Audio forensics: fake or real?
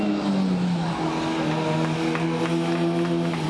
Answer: real